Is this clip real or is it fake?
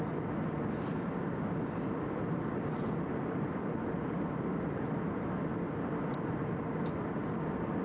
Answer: real